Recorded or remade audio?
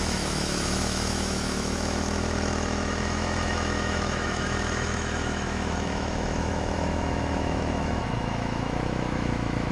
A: remade